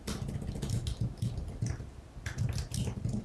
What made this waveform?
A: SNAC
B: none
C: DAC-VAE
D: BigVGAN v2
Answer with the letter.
B